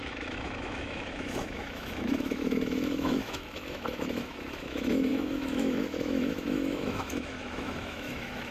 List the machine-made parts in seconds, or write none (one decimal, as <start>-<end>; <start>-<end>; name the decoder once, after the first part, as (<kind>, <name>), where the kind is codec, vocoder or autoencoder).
0.0-8.5 (autoencoder, DAC-VAE)